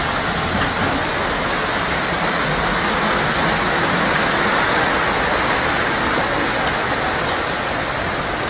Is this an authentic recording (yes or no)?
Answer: yes